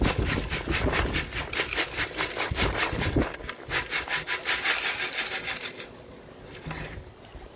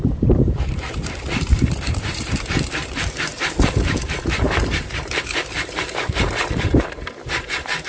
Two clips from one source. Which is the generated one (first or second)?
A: second